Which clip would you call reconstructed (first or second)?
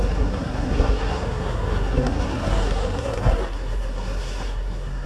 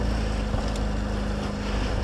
first